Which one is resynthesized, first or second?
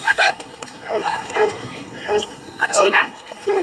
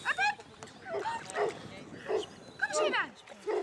first